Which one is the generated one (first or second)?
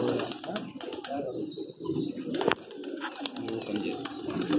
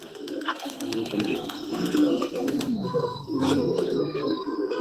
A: second